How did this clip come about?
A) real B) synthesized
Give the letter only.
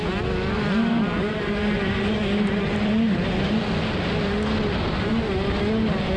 A